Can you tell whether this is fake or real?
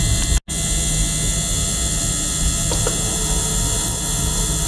real